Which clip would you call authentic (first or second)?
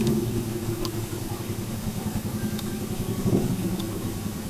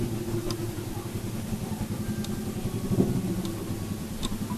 second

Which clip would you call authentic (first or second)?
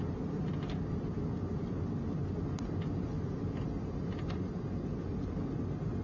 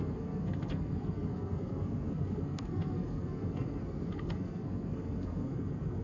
first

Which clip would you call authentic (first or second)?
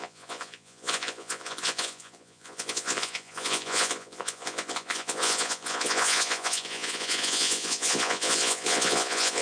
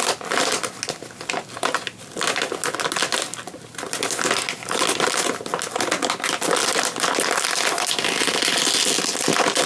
second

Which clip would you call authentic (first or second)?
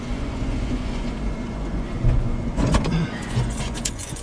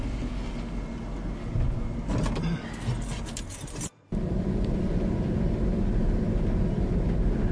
second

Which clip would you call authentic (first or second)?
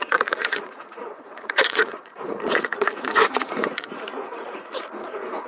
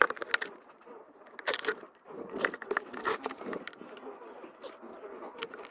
second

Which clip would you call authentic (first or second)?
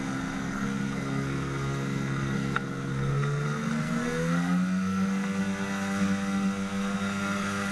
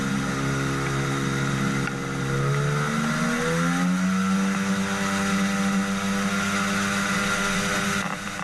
second